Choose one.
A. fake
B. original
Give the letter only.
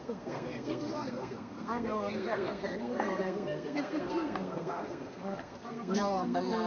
A